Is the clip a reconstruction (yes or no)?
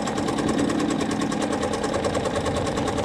yes